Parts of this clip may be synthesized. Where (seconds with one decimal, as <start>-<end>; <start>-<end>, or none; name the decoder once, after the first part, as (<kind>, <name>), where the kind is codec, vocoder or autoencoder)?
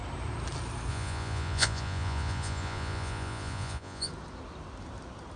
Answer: 0.9-4.1 (vocoder, Vocos)